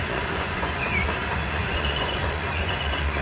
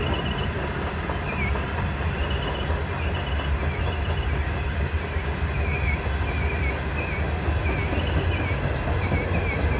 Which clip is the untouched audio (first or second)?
second